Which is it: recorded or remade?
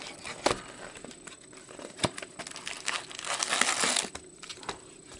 recorded